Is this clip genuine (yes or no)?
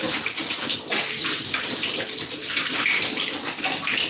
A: yes